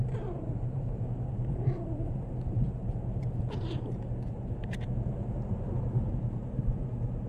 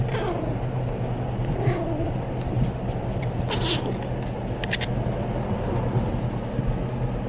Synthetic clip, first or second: first